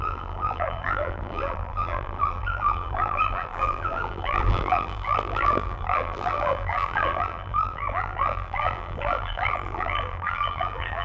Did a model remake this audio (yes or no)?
yes